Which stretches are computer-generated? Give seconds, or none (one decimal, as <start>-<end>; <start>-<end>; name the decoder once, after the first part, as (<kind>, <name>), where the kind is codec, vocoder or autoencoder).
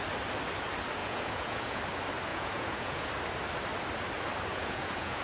1.0-1.8 (vocoder, Vocos); 2.3-3.1; 4.5-5.2